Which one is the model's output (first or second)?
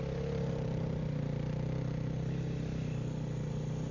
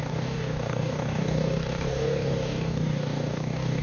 second